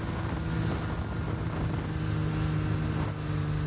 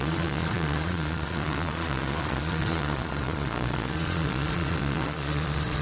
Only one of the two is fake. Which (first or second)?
second